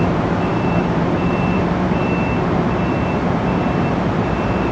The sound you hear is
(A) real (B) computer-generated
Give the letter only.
B